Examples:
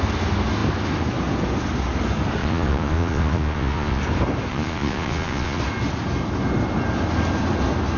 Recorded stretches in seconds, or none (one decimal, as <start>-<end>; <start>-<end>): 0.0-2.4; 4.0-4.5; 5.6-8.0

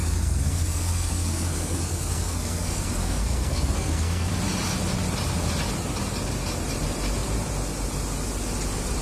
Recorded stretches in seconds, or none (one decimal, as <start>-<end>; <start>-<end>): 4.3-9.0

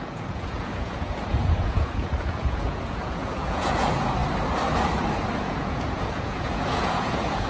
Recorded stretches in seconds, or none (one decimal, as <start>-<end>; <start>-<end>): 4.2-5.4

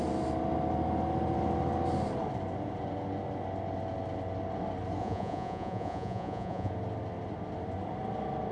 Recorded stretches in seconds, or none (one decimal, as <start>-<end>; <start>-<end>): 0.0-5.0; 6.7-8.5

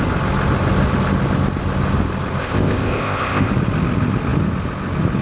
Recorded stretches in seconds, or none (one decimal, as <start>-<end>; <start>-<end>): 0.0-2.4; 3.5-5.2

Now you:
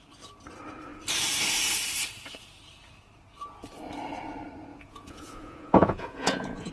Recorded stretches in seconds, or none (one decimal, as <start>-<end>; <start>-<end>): 0.0-4.7

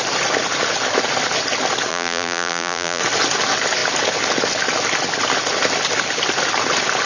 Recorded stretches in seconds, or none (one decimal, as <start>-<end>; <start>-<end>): 0.0-1.9; 3.0-7.1

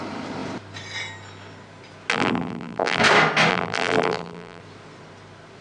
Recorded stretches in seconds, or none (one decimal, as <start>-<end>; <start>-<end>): 0.0-2.1; 3.0-3.5; 4.6-5.6